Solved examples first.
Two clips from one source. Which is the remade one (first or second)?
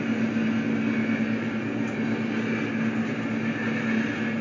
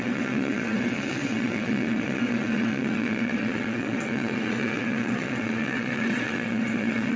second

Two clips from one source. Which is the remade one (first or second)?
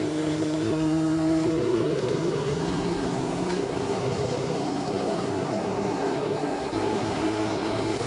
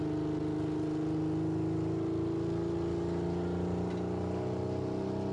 first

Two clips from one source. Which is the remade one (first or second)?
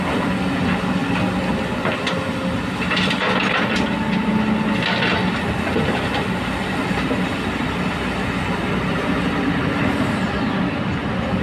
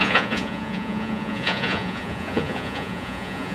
second